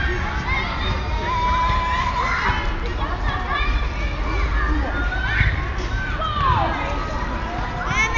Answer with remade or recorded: recorded